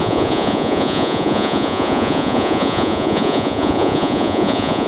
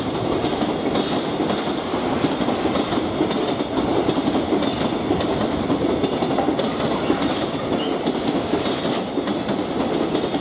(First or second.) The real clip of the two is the second